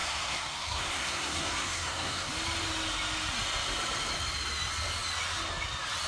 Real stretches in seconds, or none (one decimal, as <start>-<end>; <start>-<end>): 2.3-6.1